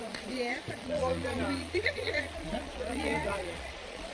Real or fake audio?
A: fake